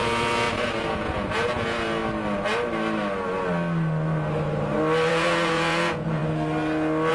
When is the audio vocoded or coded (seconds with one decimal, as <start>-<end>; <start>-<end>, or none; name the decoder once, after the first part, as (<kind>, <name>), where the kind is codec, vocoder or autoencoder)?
0.0-2.0 (vocoder, Vocos); 5.1-6.2